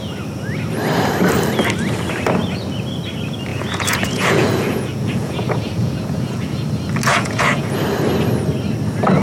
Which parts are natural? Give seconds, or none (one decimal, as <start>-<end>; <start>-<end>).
0.0-3.5; 6.6-7.1; 7.8-9.2